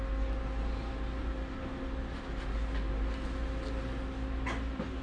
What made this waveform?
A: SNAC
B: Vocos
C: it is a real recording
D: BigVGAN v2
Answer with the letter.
C